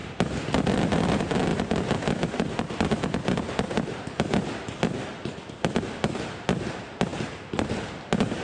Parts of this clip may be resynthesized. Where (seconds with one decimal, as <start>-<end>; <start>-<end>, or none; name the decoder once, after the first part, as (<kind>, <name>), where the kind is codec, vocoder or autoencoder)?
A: 0.0-0.8 (vocoder, BigVGAN v2); 7.1-8.0